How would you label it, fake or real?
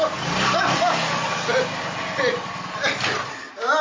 real